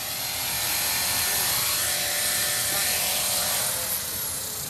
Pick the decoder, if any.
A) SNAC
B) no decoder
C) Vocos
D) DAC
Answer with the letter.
B